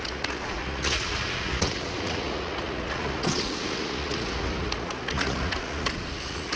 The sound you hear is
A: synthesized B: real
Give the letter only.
A